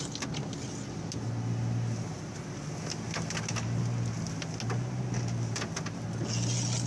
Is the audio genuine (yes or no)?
yes